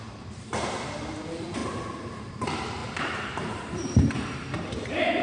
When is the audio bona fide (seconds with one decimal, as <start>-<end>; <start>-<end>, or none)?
none